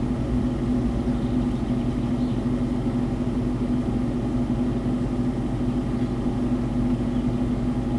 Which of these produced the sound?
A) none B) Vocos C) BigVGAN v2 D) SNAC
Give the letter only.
A